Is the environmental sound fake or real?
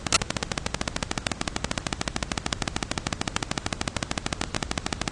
real